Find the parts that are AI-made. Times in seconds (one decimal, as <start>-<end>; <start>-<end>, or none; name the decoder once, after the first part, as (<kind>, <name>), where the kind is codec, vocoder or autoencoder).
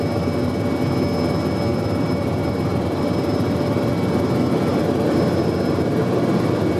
1.7-3.9 (vocoder, BigVGAN v2); 4.7-5.7